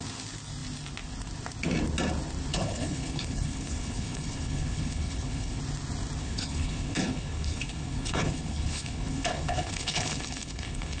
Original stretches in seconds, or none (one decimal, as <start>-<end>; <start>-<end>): 0.0-2.5; 5.6-6.2